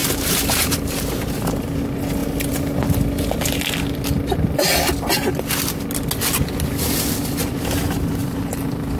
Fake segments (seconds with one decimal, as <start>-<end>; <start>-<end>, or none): 0.0-1.8; 8.2-9.0